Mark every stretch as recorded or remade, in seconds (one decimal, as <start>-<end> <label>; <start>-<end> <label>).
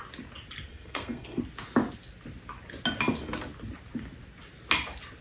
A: 0.0-0.7 recorded; 0.7-1.4 remade; 1.4-5.2 recorded